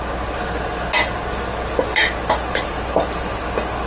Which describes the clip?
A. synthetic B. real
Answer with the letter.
B